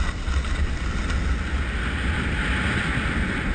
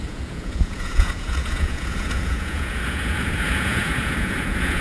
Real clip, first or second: first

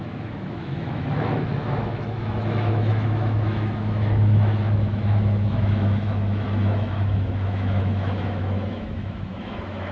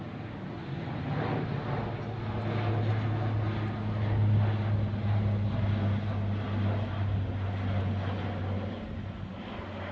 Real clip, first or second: second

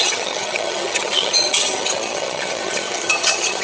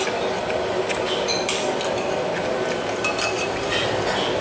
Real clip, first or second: second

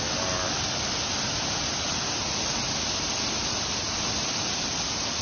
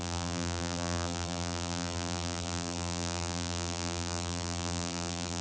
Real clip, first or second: first